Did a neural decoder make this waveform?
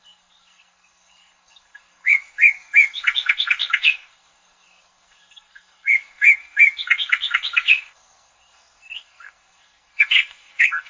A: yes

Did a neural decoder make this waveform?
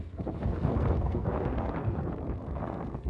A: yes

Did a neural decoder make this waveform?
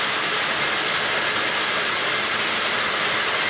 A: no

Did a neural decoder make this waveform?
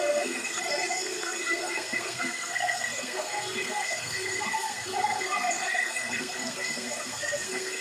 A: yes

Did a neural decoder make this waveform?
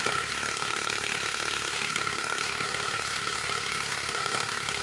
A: yes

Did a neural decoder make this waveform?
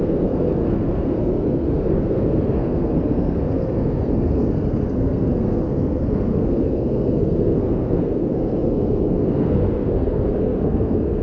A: yes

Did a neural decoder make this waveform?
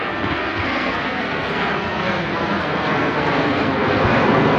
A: yes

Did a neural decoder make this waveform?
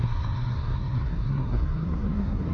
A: yes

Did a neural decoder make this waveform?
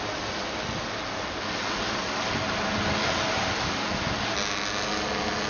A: no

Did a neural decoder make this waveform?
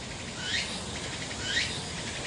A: no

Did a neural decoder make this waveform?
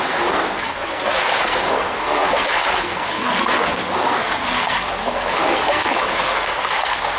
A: yes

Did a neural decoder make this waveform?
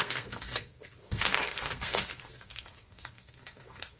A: yes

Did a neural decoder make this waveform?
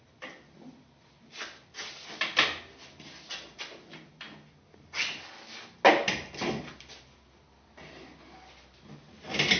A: no